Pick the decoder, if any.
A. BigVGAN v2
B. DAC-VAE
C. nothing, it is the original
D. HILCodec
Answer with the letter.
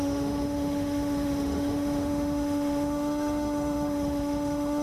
B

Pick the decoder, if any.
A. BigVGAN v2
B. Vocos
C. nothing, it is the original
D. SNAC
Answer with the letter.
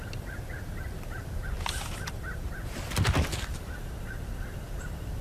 C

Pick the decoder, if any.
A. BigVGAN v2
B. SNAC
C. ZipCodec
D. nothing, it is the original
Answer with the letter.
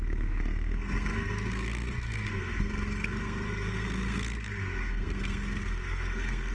B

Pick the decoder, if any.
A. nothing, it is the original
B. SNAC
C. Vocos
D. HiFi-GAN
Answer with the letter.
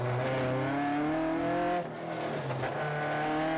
A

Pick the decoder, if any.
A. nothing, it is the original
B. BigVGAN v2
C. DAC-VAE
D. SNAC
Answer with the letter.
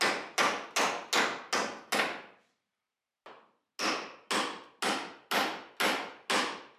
A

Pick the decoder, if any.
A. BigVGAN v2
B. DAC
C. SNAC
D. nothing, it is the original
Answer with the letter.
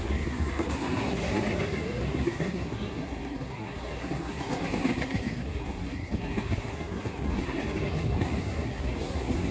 C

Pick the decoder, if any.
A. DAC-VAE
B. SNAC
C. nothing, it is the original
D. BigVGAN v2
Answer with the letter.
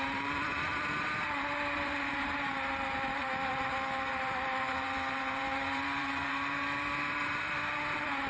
D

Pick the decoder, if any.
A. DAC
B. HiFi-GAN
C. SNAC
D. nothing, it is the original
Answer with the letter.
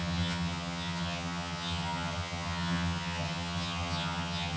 B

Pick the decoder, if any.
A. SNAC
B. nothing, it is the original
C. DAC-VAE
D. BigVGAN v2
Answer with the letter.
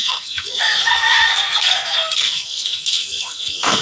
A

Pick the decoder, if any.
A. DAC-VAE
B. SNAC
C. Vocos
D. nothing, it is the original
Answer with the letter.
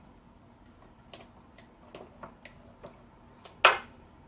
D